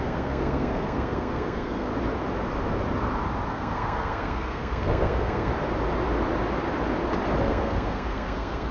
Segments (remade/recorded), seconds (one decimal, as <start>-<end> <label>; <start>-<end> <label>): 0.0-1.9 remade; 1.9-3.5 recorded; 3.5-5.5 remade; 5.5-7.4 recorded; 7.4-8.7 remade